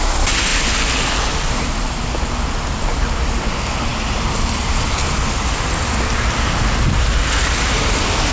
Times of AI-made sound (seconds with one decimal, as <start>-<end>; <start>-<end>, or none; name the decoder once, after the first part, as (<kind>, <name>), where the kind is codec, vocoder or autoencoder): none

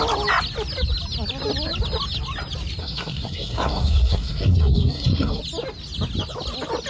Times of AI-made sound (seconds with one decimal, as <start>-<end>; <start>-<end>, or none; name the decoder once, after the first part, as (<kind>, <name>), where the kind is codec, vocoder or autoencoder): 2.8-5.4 (codec, SNAC)

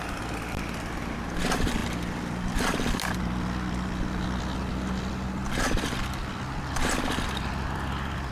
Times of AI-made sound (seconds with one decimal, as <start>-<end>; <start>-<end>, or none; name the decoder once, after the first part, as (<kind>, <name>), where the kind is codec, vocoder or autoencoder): 0.0-8.3 (vocoder, BigVGAN v2)

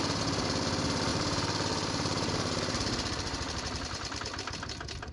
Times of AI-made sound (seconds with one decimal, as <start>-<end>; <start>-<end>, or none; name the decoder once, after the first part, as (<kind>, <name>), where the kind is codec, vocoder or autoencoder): 1.1-4.2 (vocoder, BigVGAN v2)

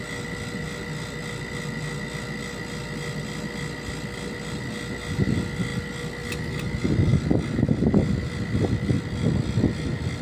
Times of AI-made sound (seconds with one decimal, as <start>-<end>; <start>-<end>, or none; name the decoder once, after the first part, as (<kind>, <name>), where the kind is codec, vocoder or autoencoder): none

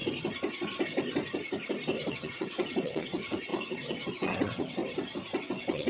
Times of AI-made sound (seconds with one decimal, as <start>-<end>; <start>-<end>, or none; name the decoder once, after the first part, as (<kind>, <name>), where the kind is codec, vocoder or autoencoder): 2.1-4.8 (vocoder, WaveNeXt); 5.4-5.9